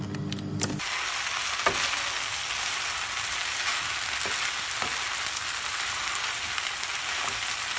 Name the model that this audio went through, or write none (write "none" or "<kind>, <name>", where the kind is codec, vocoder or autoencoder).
none